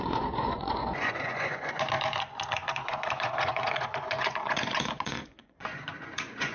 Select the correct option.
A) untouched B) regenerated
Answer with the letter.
B